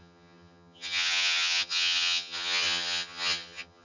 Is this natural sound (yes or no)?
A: no